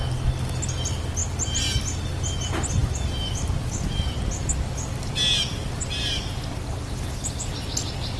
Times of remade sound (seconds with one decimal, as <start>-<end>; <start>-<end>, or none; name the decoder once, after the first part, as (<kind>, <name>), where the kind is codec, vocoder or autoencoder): none